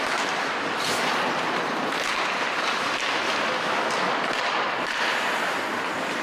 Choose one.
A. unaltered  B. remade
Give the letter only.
B